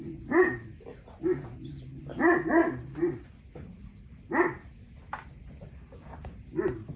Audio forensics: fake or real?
real